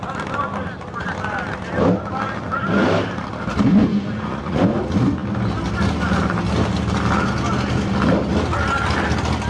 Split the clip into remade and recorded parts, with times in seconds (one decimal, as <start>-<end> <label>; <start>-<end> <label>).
0.0-3.8 recorded; 3.8-4.6 remade; 4.6-9.5 recorded